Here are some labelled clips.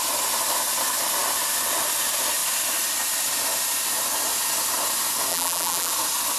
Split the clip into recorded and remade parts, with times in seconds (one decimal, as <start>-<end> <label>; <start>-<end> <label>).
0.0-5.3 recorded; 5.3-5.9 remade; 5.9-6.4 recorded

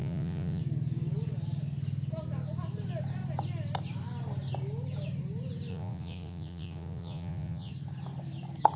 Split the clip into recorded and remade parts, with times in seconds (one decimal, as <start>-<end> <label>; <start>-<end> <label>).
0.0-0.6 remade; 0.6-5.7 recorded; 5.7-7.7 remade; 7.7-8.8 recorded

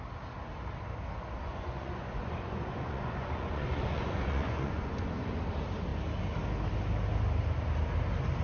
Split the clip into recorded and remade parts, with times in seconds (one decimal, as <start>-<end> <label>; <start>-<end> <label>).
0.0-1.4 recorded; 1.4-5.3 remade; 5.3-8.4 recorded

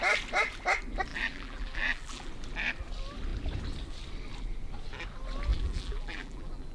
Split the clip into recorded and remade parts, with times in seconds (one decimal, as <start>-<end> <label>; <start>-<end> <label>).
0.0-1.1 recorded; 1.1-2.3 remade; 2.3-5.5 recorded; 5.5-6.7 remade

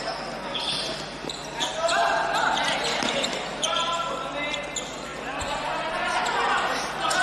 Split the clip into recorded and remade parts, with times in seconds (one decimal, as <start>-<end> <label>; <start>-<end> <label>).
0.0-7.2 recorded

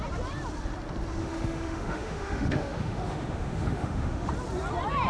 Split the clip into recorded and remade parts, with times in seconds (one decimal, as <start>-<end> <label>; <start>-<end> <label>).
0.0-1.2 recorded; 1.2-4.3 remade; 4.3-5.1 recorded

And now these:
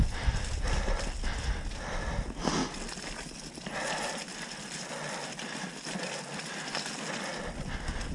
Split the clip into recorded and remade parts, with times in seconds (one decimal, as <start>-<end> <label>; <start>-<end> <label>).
0.0-8.1 recorded